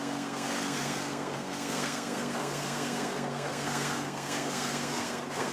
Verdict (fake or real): fake